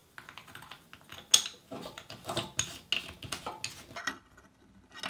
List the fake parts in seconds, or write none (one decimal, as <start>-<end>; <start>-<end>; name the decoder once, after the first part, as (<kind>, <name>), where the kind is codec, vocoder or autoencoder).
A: none